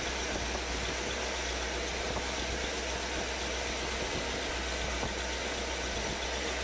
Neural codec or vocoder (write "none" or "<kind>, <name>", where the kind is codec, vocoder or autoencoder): none